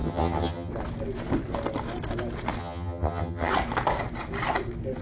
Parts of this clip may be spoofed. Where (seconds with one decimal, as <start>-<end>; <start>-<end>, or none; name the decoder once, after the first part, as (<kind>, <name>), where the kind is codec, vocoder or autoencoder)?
0.0-0.7 (vocoder, HiFi-GAN); 2.6-3.5